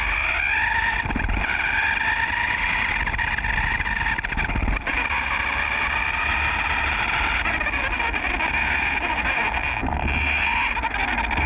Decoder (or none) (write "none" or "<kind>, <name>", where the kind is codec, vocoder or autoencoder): none